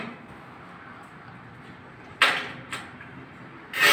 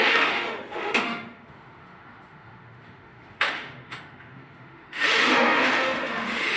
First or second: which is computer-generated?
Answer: second